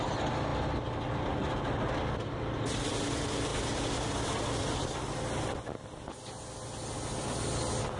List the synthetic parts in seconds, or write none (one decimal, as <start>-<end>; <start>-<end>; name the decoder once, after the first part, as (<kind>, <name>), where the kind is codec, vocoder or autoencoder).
none